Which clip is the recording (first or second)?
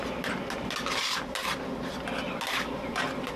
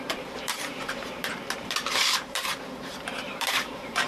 first